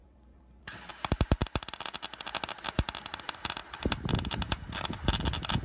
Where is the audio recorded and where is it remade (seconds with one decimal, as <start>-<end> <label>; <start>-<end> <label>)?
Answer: 0.0-0.9 remade; 0.9-5.6 recorded